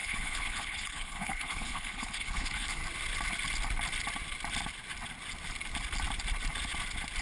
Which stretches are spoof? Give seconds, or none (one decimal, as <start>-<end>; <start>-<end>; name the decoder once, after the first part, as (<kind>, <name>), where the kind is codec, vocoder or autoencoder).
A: 0.0-2.8 (codec, HILCodec)